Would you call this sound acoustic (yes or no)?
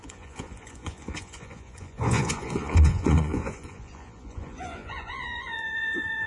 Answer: no